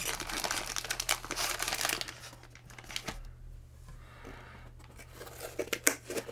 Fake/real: real